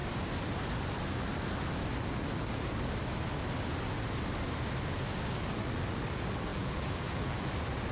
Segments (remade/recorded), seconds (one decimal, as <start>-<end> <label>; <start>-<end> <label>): 0.0-6.5 recorded; 6.5-7.5 remade; 7.5-7.9 recorded